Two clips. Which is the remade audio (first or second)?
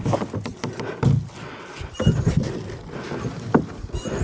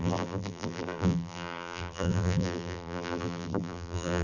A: second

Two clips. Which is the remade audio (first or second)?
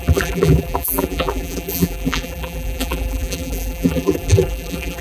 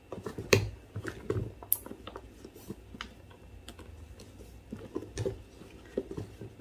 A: first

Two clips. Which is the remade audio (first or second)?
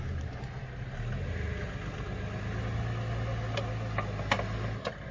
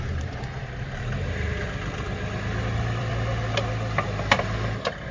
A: second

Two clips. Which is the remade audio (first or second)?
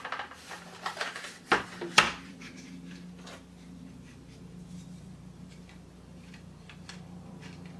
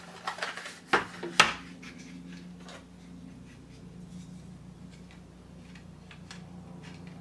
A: first